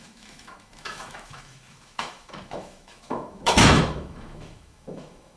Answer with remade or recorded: remade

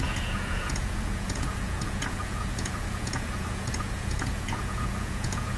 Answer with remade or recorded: remade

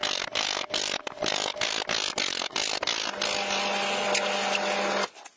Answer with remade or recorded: recorded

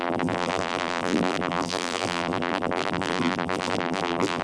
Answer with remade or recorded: remade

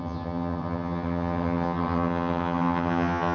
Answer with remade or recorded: remade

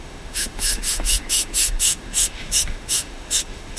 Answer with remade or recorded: remade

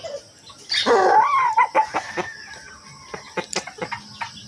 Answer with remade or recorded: recorded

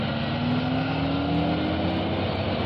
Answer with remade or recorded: recorded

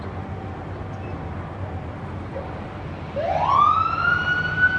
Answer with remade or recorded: recorded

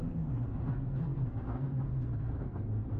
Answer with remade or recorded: remade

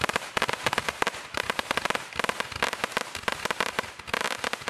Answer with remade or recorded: recorded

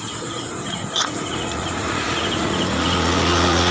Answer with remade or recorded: remade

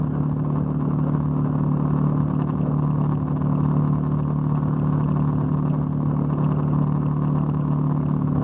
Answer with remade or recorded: recorded